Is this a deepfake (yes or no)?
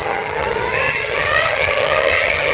yes